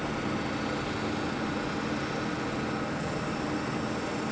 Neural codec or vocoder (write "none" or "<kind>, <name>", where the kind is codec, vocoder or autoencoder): none